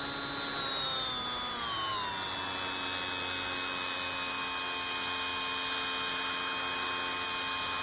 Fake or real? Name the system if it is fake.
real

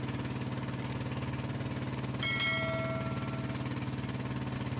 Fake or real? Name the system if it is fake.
real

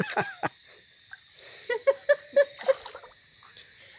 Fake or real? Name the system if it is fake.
real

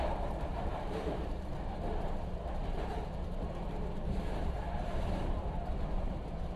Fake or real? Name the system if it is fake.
fake, vocoder, BigVGAN v2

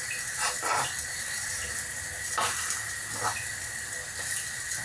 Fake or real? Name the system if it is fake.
real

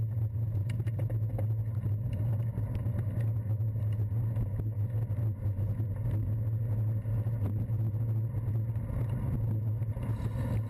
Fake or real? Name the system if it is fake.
real